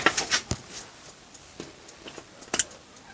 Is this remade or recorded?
recorded